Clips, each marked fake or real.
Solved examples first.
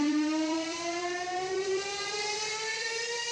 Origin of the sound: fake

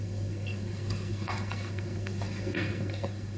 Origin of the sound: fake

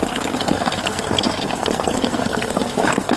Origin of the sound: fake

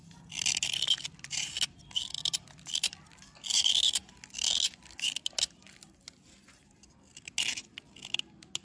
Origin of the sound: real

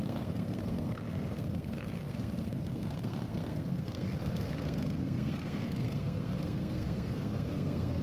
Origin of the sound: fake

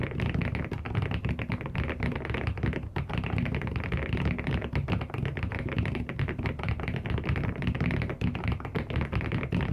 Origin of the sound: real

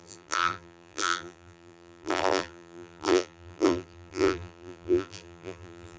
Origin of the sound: fake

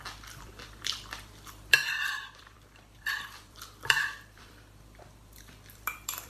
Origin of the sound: fake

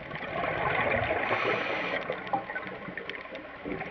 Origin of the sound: real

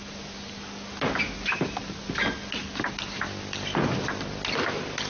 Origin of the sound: real